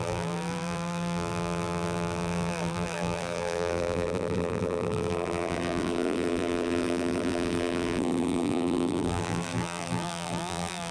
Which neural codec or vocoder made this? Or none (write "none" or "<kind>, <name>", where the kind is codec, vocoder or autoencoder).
vocoder, BigVGAN v2